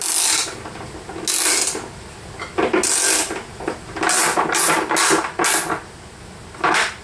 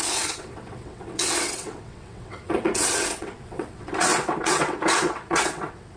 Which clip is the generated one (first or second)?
second